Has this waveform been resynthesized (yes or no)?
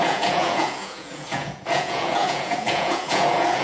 yes